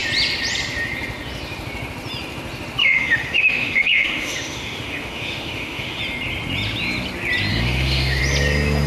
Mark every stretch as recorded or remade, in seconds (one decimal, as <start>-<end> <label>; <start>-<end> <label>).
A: 0.0-2.8 recorded; 2.8-6.0 remade; 6.0-7.5 recorded; 7.5-8.2 remade; 8.2-8.9 recorded